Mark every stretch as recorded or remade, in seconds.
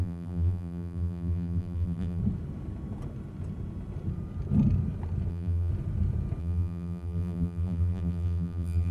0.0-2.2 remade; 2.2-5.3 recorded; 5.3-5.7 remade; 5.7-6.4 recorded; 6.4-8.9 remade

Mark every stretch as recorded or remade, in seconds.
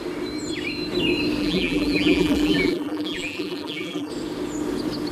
0.0-1.4 recorded; 1.4-4.1 remade; 4.1-5.1 recorded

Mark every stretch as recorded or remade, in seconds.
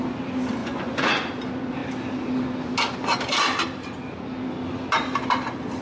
0.0-0.6 recorded; 0.6-1.3 remade; 1.3-5.8 recorded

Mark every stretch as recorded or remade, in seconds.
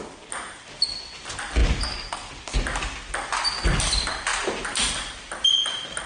0.0-6.1 recorded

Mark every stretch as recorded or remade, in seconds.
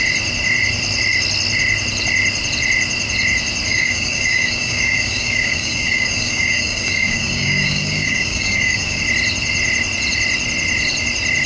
0.0-3.7 recorded; 3.7-9.0 remade; 9.0-11.5 recorded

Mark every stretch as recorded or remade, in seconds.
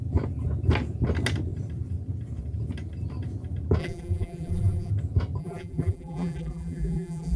0.0-3.8 recorded; 3.8-4.9 remade; 4.9-5.4 recorded; 5.4-7.4 remade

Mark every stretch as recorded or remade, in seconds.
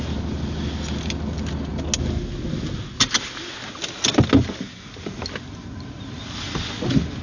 0.0-7.2 recorded